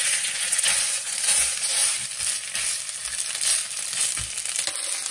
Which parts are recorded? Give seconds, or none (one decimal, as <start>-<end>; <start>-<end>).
1.8-5.1